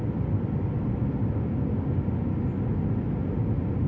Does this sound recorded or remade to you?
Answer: recorded